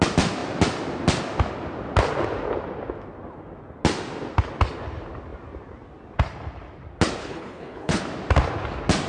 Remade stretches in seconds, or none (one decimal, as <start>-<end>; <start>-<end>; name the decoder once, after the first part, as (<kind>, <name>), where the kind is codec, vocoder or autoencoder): 7.2-8.0 (codec, HILCodec)